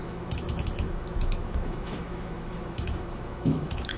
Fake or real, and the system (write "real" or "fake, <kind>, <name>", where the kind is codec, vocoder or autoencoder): fake, autoencoder, DAC-VAE